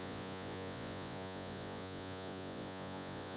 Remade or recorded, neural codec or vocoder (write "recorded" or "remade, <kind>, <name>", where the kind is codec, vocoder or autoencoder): remade, vocoder, Vocos